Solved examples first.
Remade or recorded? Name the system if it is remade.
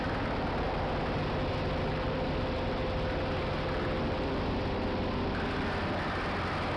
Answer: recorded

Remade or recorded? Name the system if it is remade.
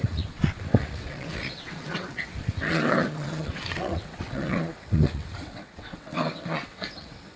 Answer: remade, vocoder, WaveNeXt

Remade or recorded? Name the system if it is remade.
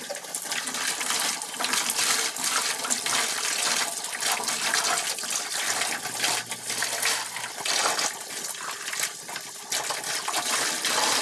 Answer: recorded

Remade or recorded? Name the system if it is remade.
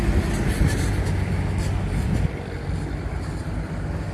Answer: recorded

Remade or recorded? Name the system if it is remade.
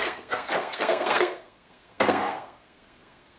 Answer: remade, codec, SNAC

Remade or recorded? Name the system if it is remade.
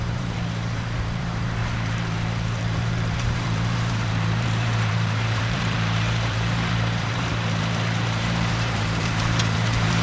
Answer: remade, vocoder, BigVGAN v2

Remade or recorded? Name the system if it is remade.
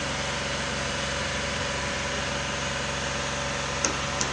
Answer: recorded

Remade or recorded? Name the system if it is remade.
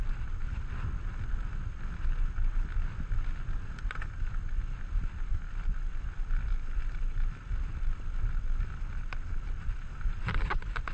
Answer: recorded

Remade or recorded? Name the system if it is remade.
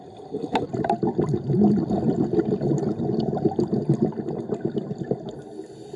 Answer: recorded